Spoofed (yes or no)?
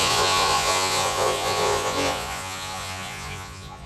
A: yes